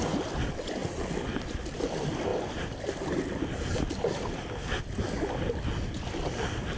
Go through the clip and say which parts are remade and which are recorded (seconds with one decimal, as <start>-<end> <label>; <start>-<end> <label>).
0.0-6.8 recorded